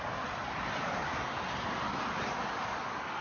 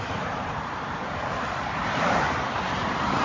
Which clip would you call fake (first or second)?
second